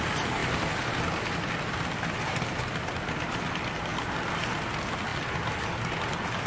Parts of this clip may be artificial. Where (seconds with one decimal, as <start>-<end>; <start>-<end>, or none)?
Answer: none